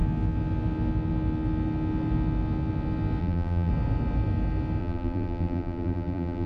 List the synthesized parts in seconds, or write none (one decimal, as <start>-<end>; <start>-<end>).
3.2-3.7; 4.8-6.5